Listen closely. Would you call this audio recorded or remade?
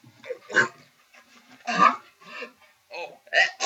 recorded